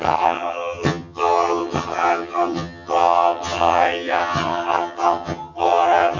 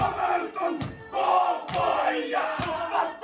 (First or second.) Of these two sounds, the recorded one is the second